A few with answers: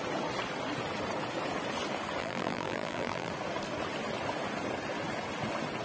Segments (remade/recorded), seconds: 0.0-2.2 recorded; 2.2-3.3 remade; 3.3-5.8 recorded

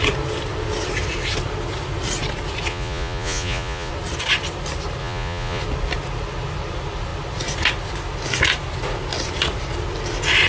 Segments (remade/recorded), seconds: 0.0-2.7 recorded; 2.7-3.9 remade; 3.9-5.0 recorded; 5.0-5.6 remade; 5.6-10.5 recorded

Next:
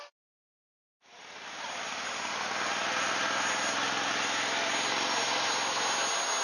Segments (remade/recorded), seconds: 0.0-6.4 recorded

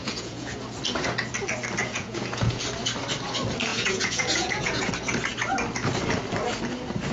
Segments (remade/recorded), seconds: 0.0-0.6 remade; 0.6-1.8 recorded; 1.8-2.6 remade; 2.6-3.7 recorded; 3.7-4.9 remade; 4.9-7.1 recorded